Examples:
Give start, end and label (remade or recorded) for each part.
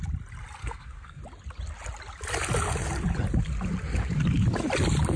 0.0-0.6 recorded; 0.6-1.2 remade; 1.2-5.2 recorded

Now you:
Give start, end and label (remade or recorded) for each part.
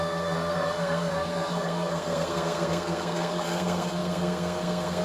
0.0-5.0 remade